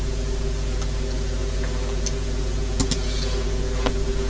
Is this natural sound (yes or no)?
yes